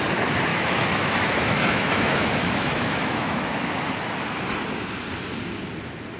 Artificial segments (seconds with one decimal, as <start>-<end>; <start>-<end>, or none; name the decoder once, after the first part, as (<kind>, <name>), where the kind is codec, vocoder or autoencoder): 0.5-3.6 (autoencoder, DAC-VAE)